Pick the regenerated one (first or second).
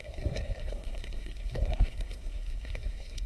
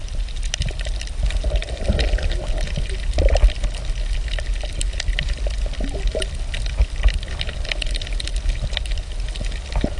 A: first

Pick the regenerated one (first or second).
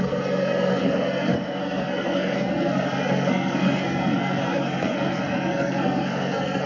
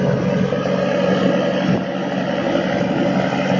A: first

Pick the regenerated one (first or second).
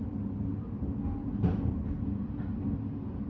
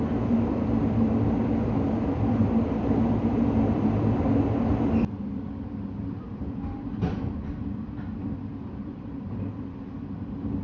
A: second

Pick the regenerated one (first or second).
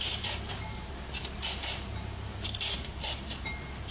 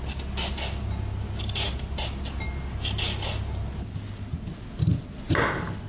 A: first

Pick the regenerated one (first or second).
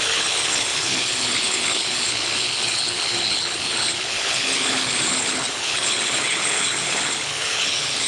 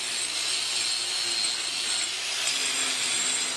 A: first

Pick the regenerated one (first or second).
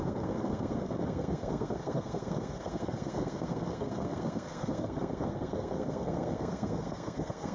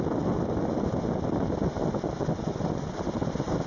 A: first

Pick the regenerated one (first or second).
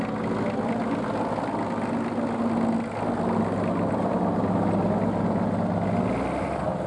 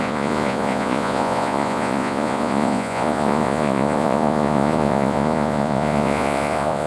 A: second